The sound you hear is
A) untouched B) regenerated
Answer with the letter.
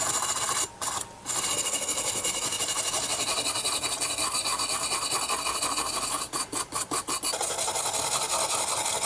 A